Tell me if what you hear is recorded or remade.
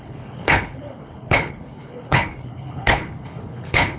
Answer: remade